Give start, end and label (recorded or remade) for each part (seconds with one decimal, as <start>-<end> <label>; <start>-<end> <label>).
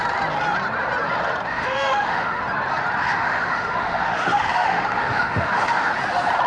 0.0-1.5 recorded; 1.5-2.4 remade; 2.4-3.0 recorded; 3.0-5.9 remade; 5.9-6.5 recorded